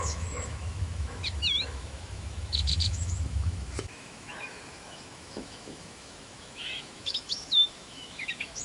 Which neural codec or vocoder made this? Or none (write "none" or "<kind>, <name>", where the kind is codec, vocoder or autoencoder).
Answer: autoencoder, DAC-VAE